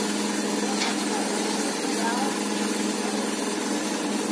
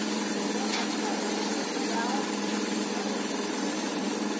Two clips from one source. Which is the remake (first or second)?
second